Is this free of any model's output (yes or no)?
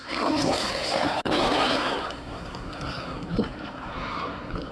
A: no